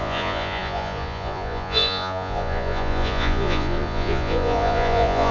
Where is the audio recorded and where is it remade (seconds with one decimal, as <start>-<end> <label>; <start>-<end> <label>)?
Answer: 0.0-5.3 remade